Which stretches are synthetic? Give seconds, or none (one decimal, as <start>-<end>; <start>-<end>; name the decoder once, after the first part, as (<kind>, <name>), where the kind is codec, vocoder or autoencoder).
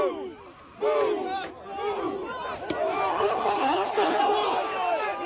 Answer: 3.1-4.2 (codec, SNAC)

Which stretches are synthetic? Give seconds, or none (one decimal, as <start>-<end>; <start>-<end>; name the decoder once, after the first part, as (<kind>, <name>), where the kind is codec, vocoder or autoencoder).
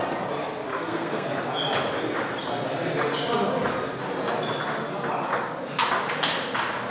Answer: 0.7-1.3 (codec, SNAC)